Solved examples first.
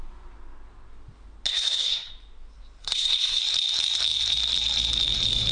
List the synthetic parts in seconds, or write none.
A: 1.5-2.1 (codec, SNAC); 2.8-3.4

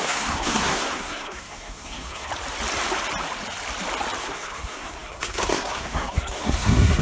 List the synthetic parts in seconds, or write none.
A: 0.0-2.3 (codec, SNAC); 4.2-7.0

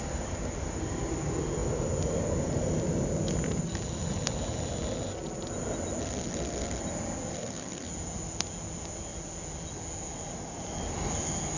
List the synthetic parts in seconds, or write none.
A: 6.0-6.8 (codec, SNAC); 7.3-7.9

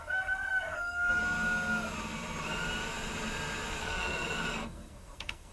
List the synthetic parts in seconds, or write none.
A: 0.0-1.2 (codec, SNAC); 3.8-5.5